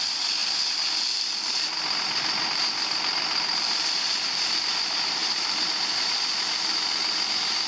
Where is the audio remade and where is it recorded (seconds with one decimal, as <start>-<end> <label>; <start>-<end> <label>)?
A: 0.0-7.7 recorded